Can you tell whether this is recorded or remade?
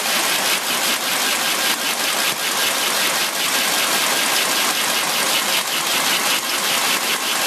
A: recorded